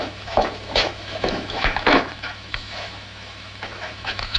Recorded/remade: remade